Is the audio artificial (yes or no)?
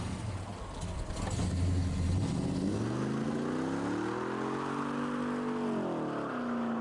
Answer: no